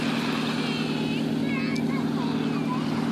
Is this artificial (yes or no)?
no